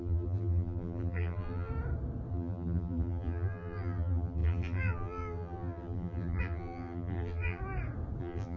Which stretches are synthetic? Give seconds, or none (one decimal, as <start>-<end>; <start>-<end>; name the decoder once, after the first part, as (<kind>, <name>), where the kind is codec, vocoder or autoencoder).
0.0-1.7 (vocoder, BigVGAN v2); 2.3-7.6; 8.2-8.6